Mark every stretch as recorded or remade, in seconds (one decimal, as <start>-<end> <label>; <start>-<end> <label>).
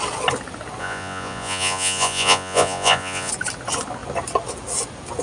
0.0-0.8 recorded; 0.8-3.3 remade; 3.3-5.2 recorded